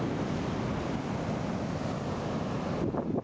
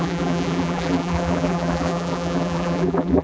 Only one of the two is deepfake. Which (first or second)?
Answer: second